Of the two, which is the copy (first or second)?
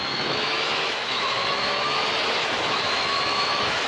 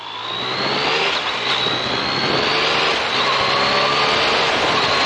first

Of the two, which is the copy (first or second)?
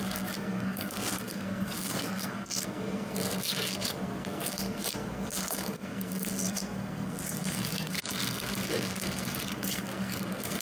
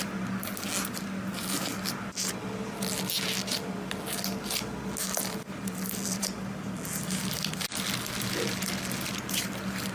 first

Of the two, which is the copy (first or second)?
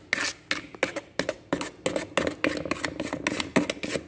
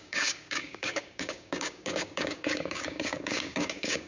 second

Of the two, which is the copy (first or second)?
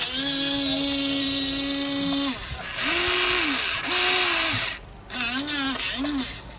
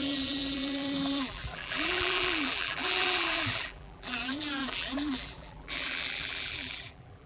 second